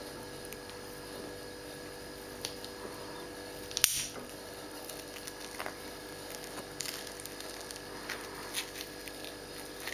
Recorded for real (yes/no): yes